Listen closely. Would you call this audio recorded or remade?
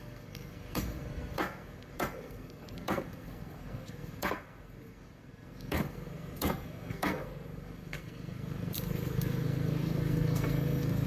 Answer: remade